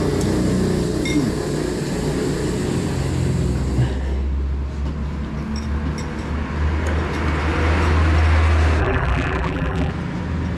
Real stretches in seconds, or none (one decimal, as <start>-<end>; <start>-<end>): 0.0-8.8; 9.9-10.6